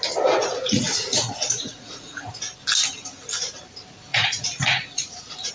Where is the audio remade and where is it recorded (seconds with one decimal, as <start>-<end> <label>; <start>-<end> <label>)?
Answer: 0.0-0.4 recorded; 0.4-2.3 remade; 2.3-4.1 recorded; 4.1-5.5 remade